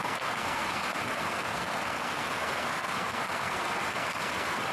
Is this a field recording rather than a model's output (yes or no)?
no